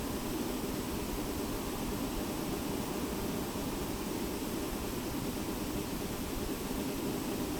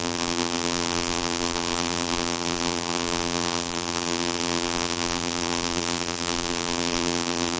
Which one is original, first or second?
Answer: first